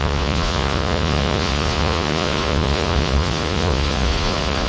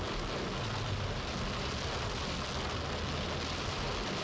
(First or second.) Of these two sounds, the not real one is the first